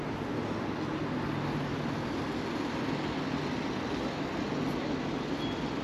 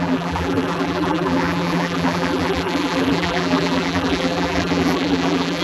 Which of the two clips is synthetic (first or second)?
second